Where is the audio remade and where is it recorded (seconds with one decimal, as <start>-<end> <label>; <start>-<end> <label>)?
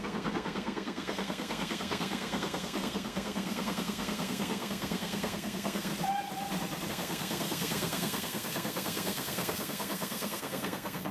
0.0-5.9 remade; 5.9-6.9 recorded; 6.9-11.1 remade